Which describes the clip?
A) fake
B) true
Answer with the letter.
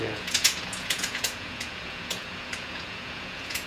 A